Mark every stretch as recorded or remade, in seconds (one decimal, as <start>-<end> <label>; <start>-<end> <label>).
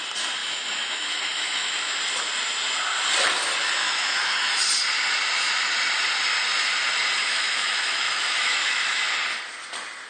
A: 0.0-0.4 recorded; 0.4-2.0 remade; 2.0-3.8 recorded; 3.8-4.5 remade; 4.5-7.2 recorded; 7.2-9.0 remade; 9.0-10.1 recorded